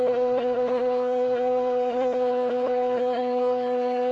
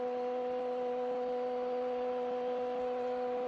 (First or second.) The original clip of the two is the second